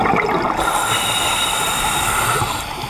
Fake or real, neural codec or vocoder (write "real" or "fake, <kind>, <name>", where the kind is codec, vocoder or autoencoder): real